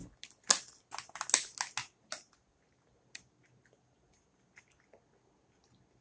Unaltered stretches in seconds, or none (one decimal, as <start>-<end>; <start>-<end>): 0.0-6.0